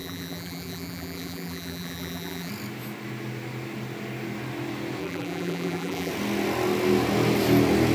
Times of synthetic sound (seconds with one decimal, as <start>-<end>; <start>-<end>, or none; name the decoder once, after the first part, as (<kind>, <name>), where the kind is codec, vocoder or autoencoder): 0.0-2.5 (vocoder, BigVGAN v2); 5.0-6.1